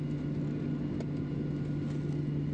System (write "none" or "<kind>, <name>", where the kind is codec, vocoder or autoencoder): none